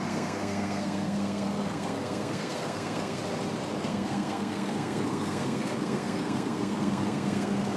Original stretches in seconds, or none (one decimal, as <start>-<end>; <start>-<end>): 3.2-3.8